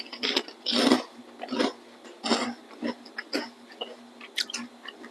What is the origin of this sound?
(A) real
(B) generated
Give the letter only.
A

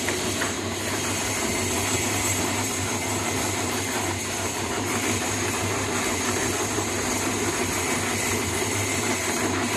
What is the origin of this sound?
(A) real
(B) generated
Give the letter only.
B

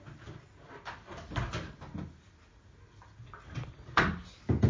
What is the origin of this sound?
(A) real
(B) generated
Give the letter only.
A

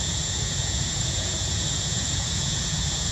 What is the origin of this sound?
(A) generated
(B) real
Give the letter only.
A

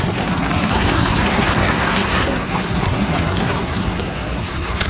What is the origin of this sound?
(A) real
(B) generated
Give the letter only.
B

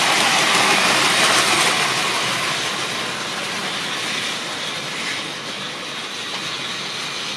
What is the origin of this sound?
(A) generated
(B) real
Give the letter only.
B